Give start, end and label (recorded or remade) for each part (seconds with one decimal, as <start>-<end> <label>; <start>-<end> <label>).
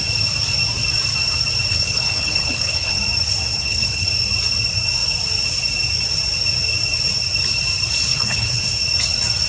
0.0-1.7 recorded; 1.7-3.0 remade; 3.0-3.5 recorded; 3.5-4.1 remade; 4.1-8.1 recorded; 8.1-8.6 remade; 8.6-9.5 recorded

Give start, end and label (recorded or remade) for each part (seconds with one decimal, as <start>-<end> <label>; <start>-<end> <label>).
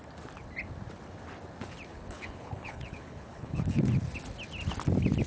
0.0-1.9 recorded; 1.9-3.8 remade; 3.8-5.3 recorded